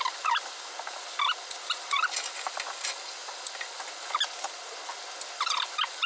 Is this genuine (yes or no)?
yes